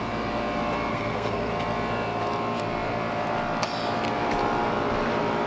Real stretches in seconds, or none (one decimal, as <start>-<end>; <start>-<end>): 0.0-0.9; 1.5-5.5